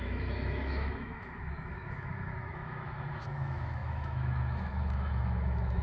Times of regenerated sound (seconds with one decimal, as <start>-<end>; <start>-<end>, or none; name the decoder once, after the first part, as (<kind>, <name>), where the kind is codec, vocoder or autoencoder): 0.0-5.8 (autoencoder, DAC-VAE)